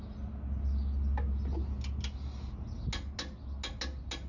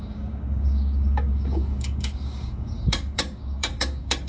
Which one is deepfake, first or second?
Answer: second